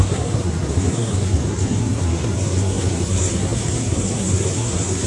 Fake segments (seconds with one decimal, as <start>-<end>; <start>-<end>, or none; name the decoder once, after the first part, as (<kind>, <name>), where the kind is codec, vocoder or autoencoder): 0.0-5.1 (codec, SNAC)